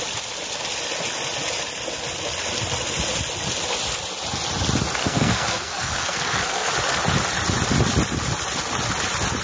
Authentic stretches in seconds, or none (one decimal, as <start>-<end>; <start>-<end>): 0.0-5.0; 6.7-9.4